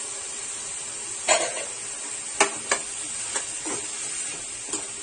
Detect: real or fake real